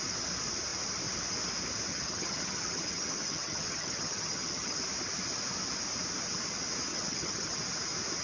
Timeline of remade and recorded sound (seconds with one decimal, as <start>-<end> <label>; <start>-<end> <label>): 0.0-1.9 recorded; 1.9-4.8 remade; 4.8-6.9 recorded; 6.9-7.6 remade; 7.6-8.2 recorded

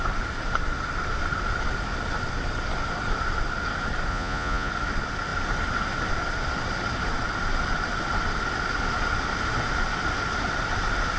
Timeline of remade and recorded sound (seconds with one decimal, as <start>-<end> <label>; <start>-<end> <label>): 0.0-4.1 recorded; 4.1-4.7 remade; 4.7-11.2 recorded

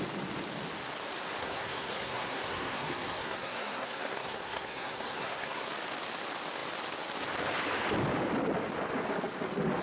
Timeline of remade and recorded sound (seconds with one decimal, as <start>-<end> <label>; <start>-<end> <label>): 0.0-1.4 recorded; 1.4-5.7 remade; 5.7-9.8 recorded